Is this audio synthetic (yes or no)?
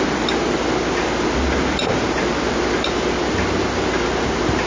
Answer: no